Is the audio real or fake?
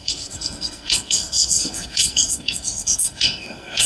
fake